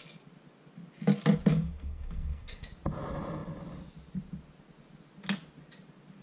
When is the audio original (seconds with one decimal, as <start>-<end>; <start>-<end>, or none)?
0.0-1.5; 2.7-6.2